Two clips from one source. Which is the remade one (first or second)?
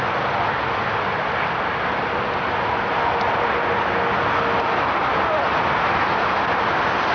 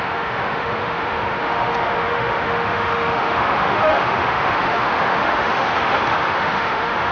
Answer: second